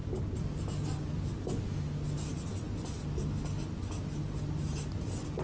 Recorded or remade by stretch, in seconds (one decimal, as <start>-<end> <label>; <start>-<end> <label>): 0.0-5.4 recorded